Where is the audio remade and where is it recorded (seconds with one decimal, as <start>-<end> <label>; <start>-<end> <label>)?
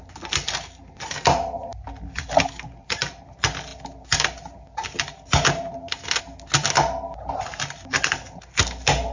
0.0-9.1 recorded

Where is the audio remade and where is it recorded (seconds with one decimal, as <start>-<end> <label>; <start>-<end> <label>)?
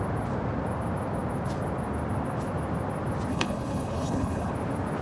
0.0-3.3 recorded; 3.3-4.5 remade; 4.5-5.0 recorded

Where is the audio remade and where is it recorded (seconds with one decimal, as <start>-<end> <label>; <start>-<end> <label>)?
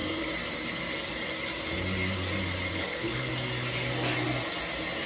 0.0-2.7 recorded; 2.7-3.3 remade; 3.3-5.1 recorded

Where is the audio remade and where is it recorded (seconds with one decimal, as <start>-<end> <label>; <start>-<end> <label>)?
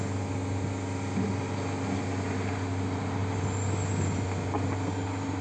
0.0-5.4 recorded